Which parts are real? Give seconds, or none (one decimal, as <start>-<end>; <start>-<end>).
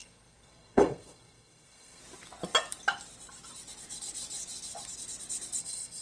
2.0-5.6